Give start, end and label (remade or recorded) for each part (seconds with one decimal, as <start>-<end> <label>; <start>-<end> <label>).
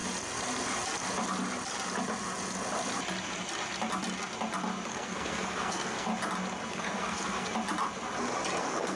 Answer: 0.0-4.9 recorded; 4.9-6.1 remade; 6.1-6.7 recorded; 6.7-7.5 remade; 7.5-8.6 recorded; 8.6-9.0 remade